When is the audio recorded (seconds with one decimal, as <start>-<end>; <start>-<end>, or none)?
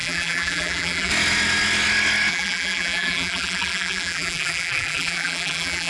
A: 1.1-2.3